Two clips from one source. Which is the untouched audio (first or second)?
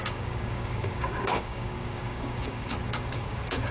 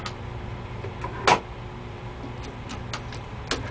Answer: second